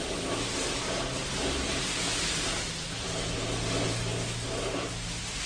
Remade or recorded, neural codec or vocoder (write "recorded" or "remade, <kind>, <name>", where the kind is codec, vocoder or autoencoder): recorded